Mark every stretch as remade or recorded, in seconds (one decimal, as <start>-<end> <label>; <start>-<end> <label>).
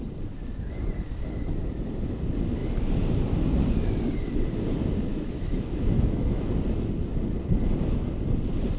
0.0-5.1 recorded; 5.1-6.5 remade; 6.5-8.8 recorded